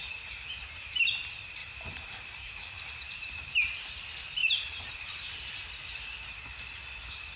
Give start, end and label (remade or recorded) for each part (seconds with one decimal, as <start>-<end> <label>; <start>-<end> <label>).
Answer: 0.0-1.6 recorded; 1.6-3.9 remade; 3.9-4.4 recorded; 4.4-5.2 remade; 5.2-7.4 recorded